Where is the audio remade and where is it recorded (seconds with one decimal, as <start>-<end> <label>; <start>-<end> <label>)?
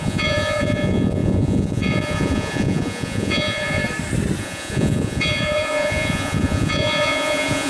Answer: 0.0-3.8 remade; 3.8-4.4 recorded; 4.4-7.7 remade